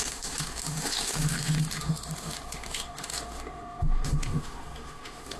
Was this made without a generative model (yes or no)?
no